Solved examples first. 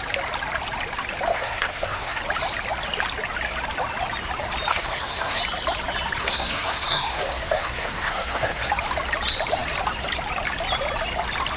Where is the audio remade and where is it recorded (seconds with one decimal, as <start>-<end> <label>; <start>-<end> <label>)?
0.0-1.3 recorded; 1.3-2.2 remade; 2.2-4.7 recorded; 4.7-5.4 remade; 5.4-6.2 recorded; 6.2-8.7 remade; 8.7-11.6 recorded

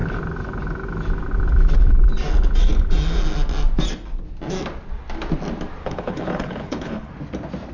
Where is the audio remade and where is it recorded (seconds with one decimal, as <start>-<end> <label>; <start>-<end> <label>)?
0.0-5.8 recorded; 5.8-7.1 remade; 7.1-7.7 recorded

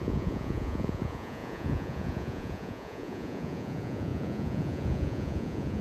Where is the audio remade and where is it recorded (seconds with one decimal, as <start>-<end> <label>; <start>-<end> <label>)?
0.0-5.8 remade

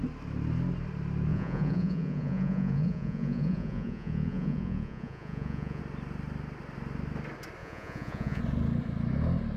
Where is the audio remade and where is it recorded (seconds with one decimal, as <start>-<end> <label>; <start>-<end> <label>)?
0.0-1.3 recorded; 1.3-5.8 remade; 5.8-7.6 recorded; 7.6-8.4 remade; 8.4-9.6 recorded

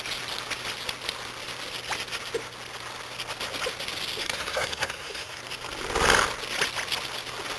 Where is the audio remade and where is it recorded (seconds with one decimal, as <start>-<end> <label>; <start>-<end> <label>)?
0.0-4.2 recorded; 4.2-5.4 remade; 5.4-7.6 recorded